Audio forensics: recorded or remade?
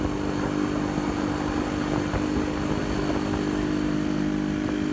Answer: recorded